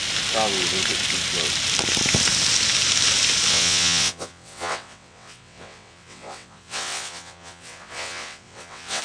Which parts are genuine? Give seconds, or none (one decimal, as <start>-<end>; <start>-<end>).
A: 0.0-3.5